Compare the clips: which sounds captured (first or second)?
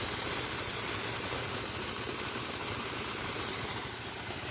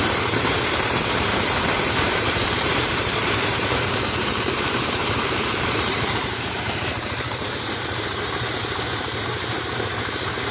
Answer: first